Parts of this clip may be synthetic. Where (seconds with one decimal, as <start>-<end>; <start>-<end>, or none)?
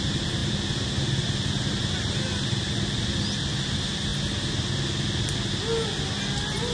none